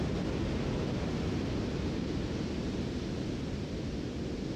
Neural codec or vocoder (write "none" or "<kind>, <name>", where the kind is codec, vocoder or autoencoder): none